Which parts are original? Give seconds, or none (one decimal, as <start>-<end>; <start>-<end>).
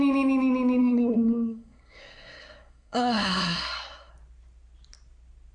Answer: 0.0-0.8; 4.1-5.5